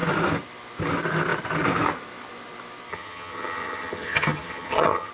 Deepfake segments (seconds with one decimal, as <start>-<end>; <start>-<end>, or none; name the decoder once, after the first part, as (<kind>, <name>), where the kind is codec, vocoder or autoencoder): 2.9-5.1 (vocoder, HiFi-GAN)